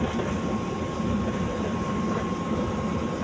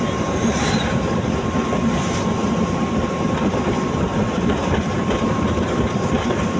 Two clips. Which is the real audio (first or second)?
first